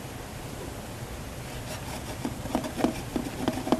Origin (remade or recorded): recorded